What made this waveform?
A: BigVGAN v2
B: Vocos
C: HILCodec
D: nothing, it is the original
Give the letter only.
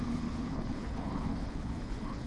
C